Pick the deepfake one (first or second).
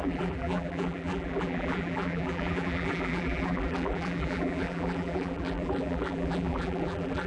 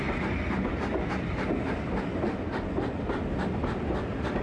first